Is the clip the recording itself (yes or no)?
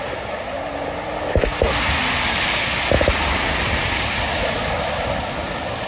yes